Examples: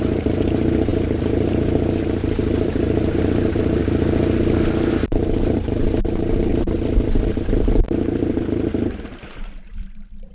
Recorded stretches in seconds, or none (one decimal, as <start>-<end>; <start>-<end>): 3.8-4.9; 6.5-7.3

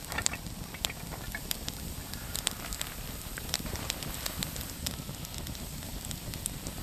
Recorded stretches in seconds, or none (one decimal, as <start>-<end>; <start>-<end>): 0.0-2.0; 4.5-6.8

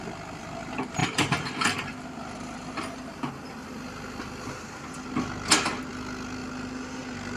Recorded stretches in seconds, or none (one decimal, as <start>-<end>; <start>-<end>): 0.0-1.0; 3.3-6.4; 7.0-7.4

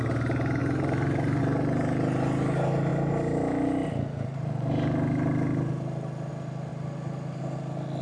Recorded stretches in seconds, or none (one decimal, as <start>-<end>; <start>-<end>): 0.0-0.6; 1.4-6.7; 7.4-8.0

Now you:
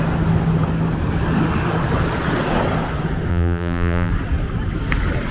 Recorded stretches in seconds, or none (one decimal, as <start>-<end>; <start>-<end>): 0.0-3.3; 4.1-5.3

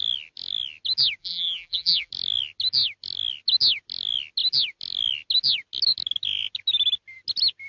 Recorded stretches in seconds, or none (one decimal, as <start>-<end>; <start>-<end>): 0.0-1.2; 2.1-7.7